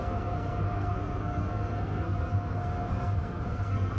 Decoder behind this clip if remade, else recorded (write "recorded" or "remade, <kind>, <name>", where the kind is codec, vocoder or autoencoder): remade, codec, SNAC